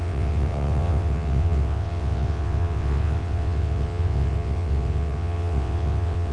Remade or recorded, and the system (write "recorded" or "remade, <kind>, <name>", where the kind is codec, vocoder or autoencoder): remade, vocoder, WaveNeXt